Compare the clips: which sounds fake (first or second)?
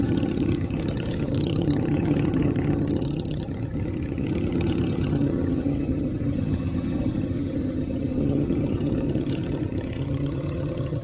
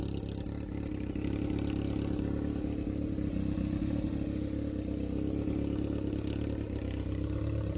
first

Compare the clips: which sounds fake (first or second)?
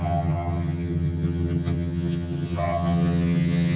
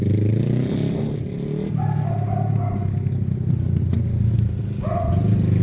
first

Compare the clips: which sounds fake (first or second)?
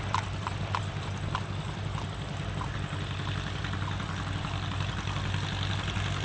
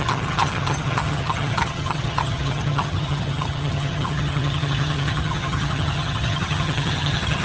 second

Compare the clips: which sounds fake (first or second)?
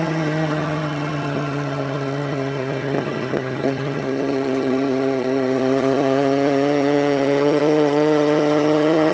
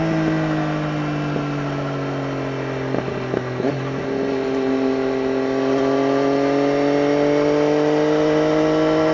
first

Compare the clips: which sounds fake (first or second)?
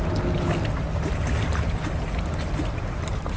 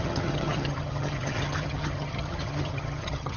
second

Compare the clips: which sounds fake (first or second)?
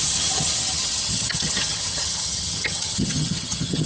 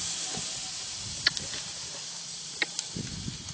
first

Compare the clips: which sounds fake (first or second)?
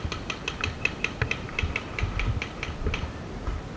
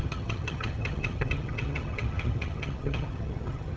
second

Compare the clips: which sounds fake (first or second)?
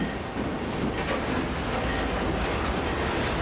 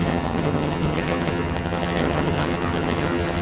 second